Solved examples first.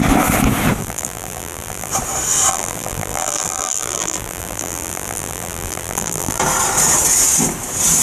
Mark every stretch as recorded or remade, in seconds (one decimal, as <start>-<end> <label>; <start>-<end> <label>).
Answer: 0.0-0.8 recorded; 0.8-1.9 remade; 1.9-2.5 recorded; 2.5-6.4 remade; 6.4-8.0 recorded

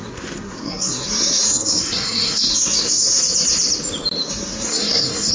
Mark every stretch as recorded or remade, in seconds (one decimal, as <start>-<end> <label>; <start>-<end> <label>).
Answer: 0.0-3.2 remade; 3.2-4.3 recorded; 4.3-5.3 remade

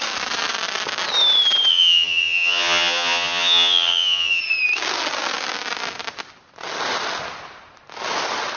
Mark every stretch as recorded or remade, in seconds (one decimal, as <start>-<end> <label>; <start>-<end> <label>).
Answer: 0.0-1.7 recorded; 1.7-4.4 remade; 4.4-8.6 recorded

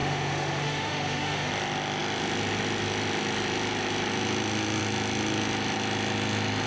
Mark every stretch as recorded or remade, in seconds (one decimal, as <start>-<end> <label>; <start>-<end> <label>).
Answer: 0.0-1.5 remade; 1.5-6.7 recorded